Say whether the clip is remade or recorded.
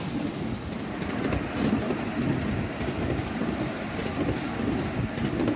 recorded